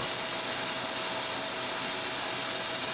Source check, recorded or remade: recorded